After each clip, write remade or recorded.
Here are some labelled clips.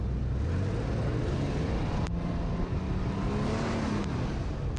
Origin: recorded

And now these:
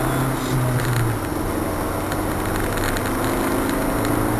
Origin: recorded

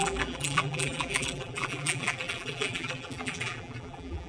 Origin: remade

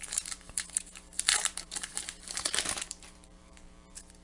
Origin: remade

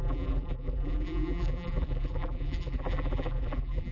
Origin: remade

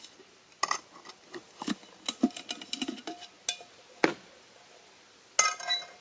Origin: recorded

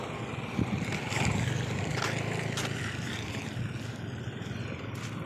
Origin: recorded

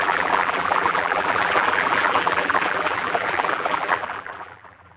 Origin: remade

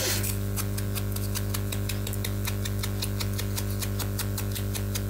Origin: recorded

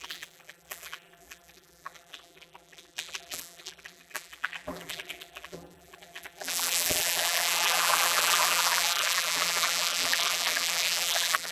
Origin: remade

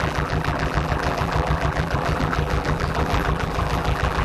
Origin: remade